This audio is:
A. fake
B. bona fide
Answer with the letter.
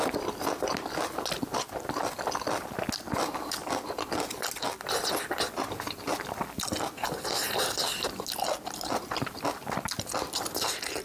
B